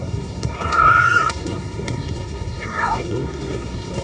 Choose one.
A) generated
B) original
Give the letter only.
A